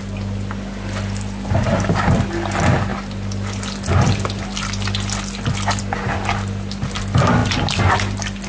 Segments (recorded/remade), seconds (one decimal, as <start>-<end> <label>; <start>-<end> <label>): 0.0-8.5 recorded

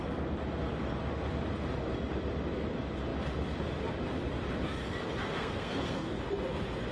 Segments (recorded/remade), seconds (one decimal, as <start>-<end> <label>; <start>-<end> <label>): 0.0-5.2 recorded; 5.2-6.2 remade; 6.2-6.9 recorded

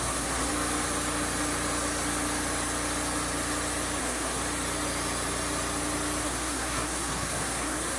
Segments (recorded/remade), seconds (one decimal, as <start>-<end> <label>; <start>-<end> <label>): 0.0-0.5 remade; 0.5-4.0 recorded; 4.0-4.4 remade; 4.4-6.2 recorded; 6.2-8.0 remade

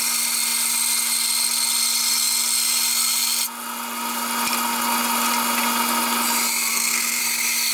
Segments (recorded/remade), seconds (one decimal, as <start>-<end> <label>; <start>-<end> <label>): 0.0-6.7 recorded; 6.7-7.2 remade; 7.2-7.7 recorded

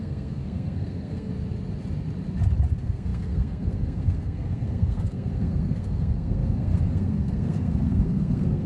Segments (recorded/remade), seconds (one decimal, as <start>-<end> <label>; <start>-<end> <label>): 0.0-1.3 remade; 1.3-2.7 recorded; 2.7-8.7 remade